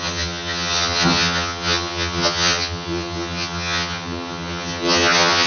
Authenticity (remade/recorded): remade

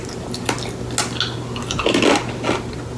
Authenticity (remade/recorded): recorded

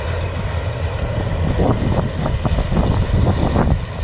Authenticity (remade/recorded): recorded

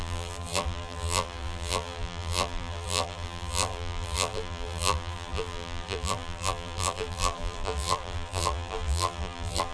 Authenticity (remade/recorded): remade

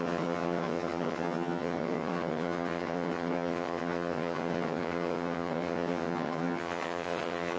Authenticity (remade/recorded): remade